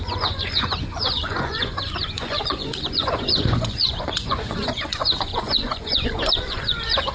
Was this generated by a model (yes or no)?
yes